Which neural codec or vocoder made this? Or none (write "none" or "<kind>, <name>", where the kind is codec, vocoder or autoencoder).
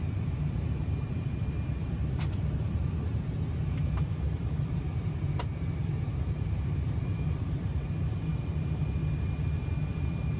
vocoder, BigVGAN v2